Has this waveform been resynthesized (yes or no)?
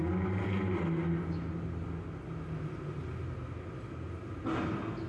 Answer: no